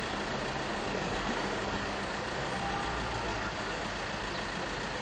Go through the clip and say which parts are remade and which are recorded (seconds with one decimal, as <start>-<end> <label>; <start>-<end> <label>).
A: 0.0-0.7 recorded; 0.7-2.6 remade; 2.6-3.3 recorded; 3.3-3.8 remade; 3.8-5.0 recorded